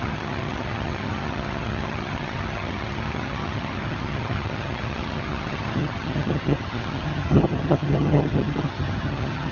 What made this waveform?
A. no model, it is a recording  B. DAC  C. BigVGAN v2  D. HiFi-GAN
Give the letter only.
D